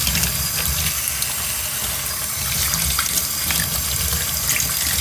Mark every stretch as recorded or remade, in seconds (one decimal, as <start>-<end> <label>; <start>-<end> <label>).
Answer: 0.0-5.0 recorded